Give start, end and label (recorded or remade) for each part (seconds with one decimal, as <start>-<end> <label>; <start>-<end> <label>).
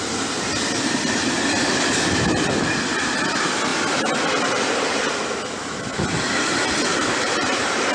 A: 0.0-6.9 recorded; 6.9-7.9 remade